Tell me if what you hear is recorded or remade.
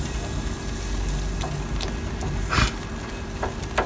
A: recorded